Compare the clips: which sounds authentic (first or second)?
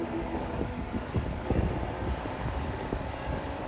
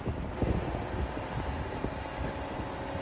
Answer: second